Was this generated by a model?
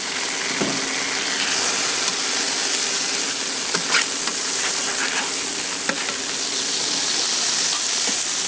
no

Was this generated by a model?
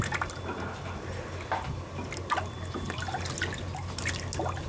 no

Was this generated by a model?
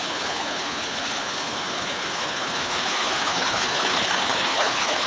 yes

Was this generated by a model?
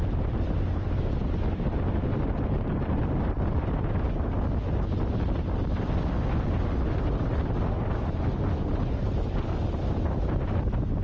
no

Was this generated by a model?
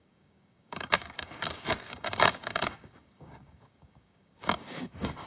yes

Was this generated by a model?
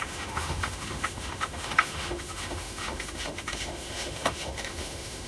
yes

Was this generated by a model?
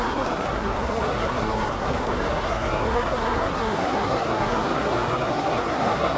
yes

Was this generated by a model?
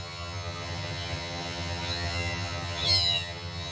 yes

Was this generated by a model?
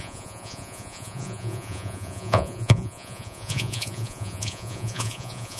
yes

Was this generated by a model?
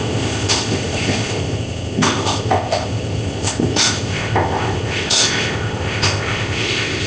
yes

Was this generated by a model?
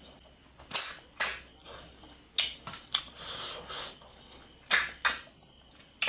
no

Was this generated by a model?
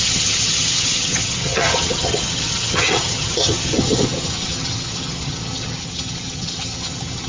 yes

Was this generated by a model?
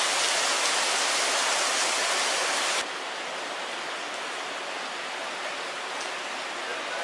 no